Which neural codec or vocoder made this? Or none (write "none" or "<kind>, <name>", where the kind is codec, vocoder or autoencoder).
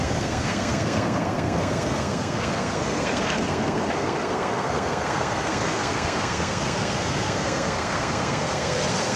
codec, SNAC